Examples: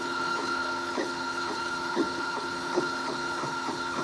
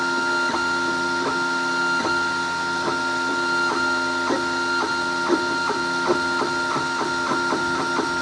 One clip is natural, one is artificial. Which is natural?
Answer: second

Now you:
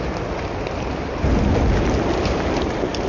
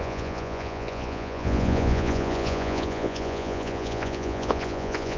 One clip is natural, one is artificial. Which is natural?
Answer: first